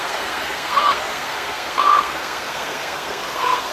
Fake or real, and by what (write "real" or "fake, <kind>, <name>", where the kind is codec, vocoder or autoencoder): fake, codec, SNAC